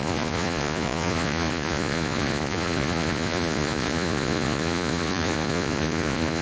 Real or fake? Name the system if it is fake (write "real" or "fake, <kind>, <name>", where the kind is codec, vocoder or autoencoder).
fake, vocoder, Vocos